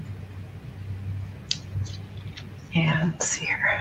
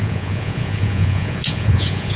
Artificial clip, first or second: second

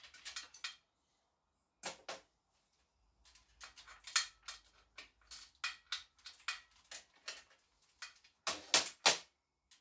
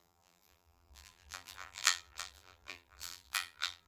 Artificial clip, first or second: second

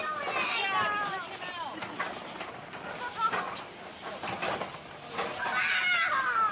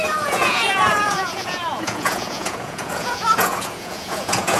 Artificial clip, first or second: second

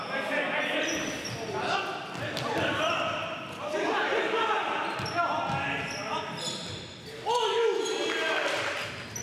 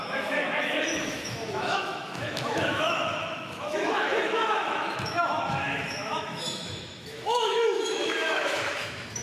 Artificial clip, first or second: second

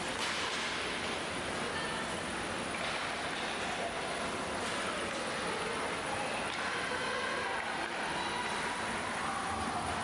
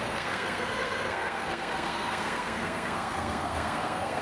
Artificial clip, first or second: second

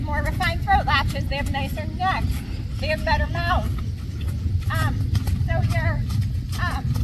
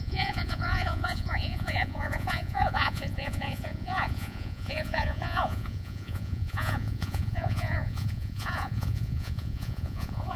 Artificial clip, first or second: second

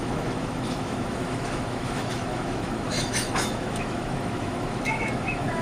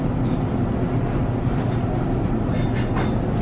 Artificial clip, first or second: first